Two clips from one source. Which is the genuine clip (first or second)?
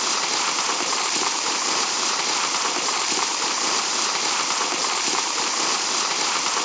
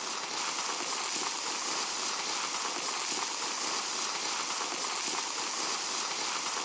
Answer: second